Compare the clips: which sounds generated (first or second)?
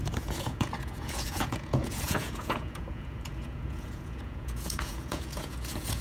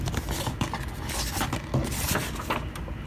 first